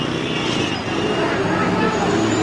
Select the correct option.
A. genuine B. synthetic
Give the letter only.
A